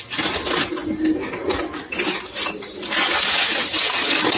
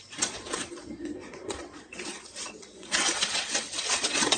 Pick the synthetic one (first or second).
second